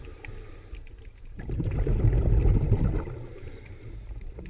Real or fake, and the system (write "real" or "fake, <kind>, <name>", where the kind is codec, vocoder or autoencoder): fake, vocoder, BigVGAN v2